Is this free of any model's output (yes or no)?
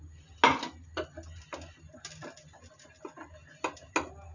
yes